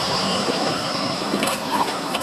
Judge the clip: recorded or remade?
remade